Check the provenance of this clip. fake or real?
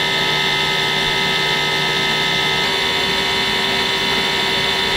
real